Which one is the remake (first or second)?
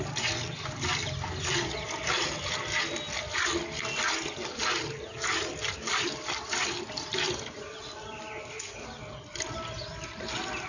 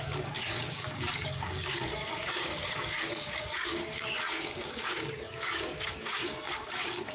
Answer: second